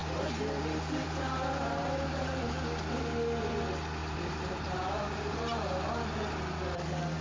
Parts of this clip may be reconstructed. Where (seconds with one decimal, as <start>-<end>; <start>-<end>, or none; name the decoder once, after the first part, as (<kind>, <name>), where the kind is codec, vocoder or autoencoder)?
0.0-2.5 (vocoder, BigVGAN v2); 4.0-5.3